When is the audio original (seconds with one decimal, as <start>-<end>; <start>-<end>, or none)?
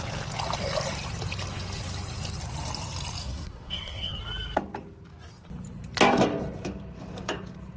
0.0-3.2; 4.2-7.8